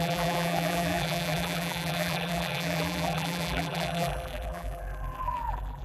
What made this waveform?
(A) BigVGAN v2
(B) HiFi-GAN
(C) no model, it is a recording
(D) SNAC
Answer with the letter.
A